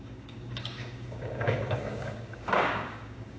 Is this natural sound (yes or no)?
no